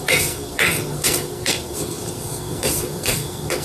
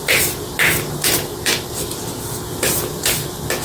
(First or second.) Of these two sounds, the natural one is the second